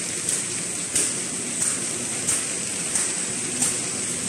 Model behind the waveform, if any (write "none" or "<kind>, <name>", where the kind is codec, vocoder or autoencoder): none